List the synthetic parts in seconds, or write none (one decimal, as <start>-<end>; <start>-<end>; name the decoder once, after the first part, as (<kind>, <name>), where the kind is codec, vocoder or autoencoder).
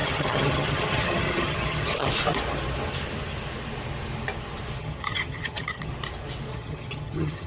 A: 0.0-2.1 (vocoder, HiFi-GAN); 4.8-5.9; 6.5-7.5